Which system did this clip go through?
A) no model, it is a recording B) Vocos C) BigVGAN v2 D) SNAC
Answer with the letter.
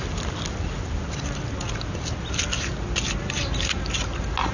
A